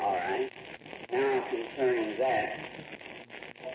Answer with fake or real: real